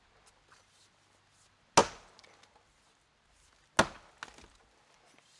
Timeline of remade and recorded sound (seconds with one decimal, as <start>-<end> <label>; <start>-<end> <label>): 0.0-5.4 recorded